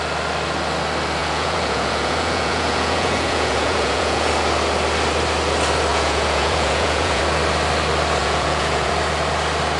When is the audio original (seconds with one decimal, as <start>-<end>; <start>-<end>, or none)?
0.0-1.2; 4.3-5.9; 7.2-8.2; 8.9-9.8